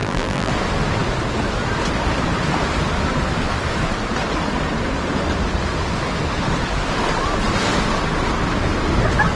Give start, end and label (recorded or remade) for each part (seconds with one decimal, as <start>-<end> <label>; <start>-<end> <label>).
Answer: 0.0-0.5 remade; 0.5-9.4 recorded